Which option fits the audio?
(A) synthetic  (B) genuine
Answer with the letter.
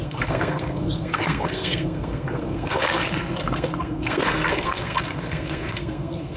A